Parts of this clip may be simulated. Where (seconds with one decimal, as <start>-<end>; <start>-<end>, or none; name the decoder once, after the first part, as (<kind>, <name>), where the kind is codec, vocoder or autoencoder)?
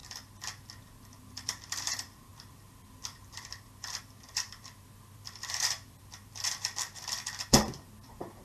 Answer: 1.2-8.4 (vocoder, BigVGAN v2)